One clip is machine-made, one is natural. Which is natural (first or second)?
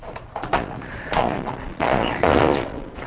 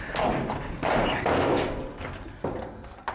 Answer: second